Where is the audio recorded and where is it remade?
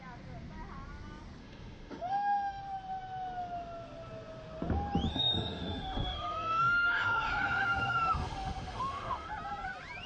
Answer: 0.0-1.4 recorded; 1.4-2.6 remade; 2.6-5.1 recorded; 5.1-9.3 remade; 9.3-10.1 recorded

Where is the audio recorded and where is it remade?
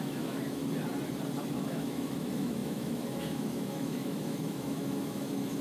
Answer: 0.0-0.6 remade; 0.6-1.5 recorded; 1.5-5.6 remade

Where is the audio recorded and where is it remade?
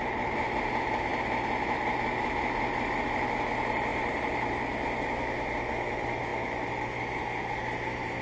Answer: 0.0-8.2 recorded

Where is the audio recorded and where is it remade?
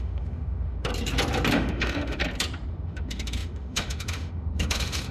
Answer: 0.0-0.9 remade; 0.9-1.5 recorded; 1.5-2.2 remade; 2.2-2.7 recorded; 2.7-5.1 remade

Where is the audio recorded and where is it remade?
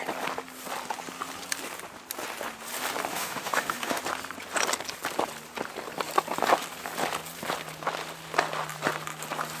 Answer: 0.0-3.1 recorded; 3.1-4.0 remade; 4.0-9.6 recorded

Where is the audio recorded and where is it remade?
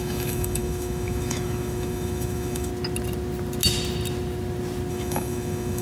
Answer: 0.0-2.7 remade; 2.7-4.9 recorded; 4.9-5.8 remade